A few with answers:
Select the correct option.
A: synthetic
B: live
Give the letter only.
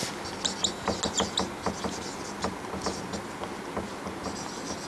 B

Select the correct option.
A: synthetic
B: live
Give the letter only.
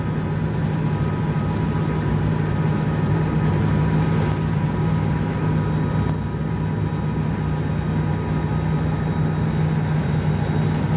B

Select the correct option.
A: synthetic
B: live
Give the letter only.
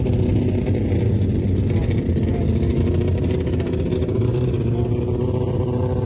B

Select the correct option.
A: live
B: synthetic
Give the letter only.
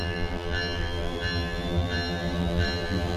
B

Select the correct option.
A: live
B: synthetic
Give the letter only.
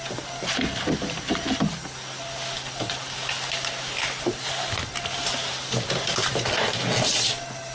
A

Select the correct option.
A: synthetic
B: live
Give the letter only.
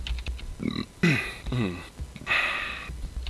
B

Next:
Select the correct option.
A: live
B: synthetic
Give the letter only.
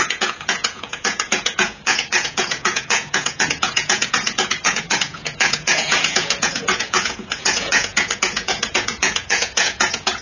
B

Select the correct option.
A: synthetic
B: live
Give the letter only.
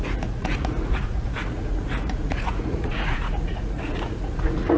A